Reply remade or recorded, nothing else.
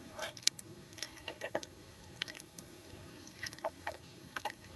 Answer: remade